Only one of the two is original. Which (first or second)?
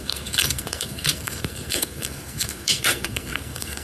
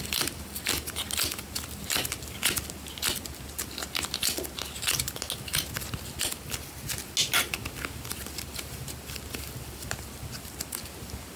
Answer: second